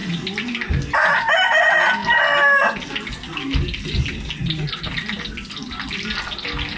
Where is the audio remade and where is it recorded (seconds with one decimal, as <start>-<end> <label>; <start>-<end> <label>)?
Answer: 0.0-6.8 recorded